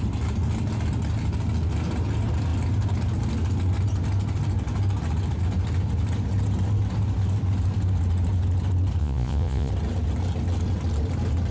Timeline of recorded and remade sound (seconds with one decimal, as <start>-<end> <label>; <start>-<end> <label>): 0.0-9.0 recorded; 9.0-9.7 remade; 9.7-11.5 recorded